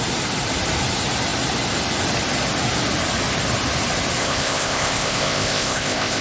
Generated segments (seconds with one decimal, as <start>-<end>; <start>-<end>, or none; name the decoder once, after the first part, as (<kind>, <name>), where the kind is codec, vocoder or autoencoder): 4.2-6.2 (codec, ZipCodec)